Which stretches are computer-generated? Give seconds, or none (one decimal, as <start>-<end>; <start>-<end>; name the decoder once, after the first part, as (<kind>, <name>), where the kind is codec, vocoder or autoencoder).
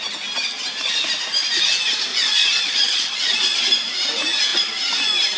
2.1-3.7 (vocoder, Vocos)